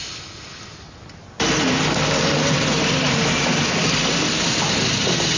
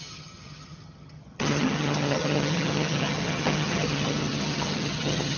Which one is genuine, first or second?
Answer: first